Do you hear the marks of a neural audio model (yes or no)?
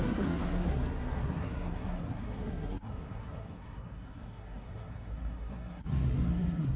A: yes